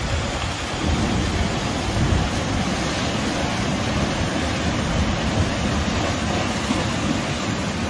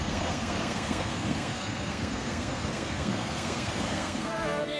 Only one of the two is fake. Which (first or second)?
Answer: second